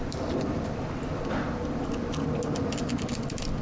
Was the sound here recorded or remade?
recorded